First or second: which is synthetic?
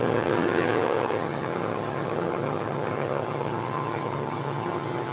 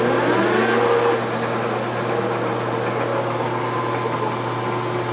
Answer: first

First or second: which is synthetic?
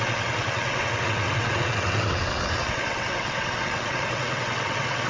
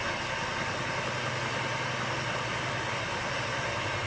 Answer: first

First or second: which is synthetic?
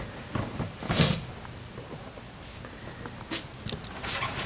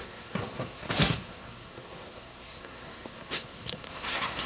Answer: second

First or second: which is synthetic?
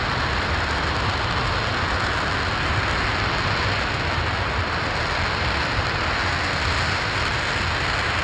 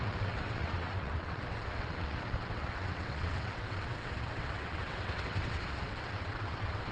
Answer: second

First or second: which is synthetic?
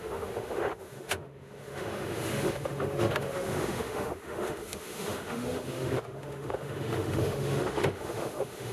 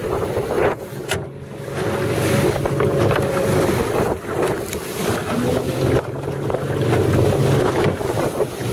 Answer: first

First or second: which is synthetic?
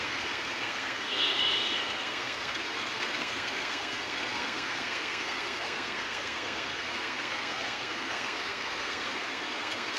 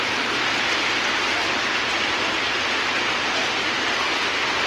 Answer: first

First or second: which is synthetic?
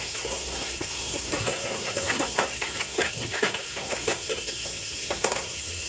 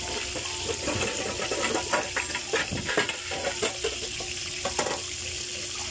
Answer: first